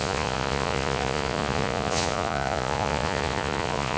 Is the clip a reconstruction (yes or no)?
yes